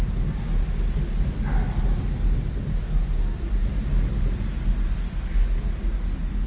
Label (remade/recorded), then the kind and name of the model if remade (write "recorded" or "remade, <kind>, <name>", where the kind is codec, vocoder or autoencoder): recorded